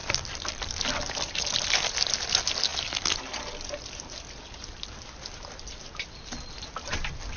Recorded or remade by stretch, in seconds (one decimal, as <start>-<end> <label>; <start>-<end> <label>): 0.0-7.4 recorded